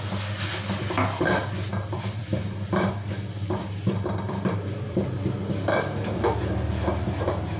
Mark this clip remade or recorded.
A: remade